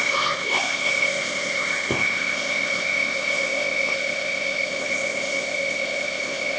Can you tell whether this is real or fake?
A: fake